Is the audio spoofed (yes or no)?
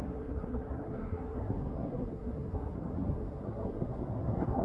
yes